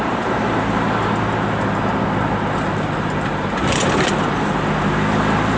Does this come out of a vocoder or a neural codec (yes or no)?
no